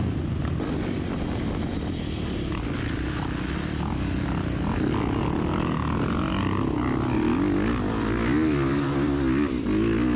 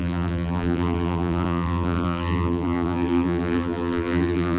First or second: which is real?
first